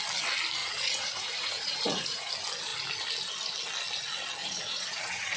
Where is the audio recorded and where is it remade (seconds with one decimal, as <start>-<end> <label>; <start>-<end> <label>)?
0.0-0.6 recorded; 0.6-2.3 remade; 2.3-4.4 recorded; 4.4-5.4 remade